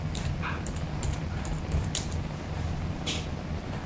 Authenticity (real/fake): real